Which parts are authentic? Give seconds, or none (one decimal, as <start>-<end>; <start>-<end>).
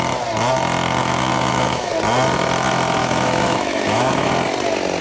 0.0-1.0; 1.9-3.0; 4.3-5.0